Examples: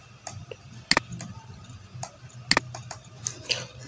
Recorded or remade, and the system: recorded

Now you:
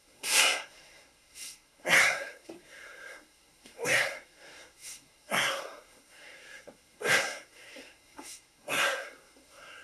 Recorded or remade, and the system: remade, codec, SNAC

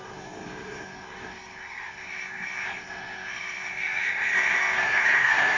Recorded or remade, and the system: remade, codec, SNAC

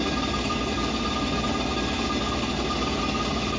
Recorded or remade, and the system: recorded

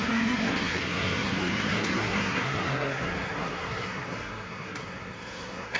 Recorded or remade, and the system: remade, codec, SNAC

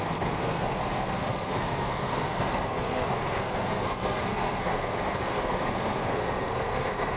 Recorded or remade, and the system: remade, codec, SNAC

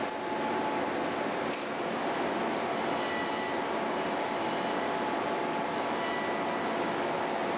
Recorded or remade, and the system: recorded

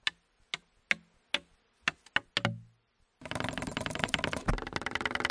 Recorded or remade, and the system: recorded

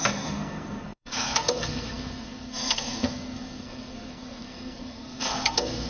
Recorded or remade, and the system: remade, codec, SNAC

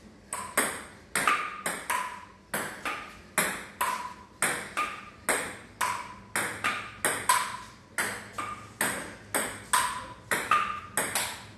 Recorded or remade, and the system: recorded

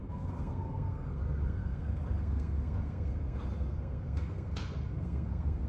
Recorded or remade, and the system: remade, codec, SNAC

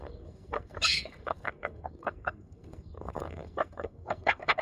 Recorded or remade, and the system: remade, codec, SNAC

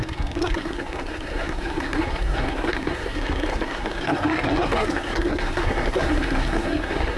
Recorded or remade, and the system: remade, codec, SNAC